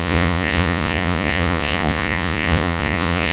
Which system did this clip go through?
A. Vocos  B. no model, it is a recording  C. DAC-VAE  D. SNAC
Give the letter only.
A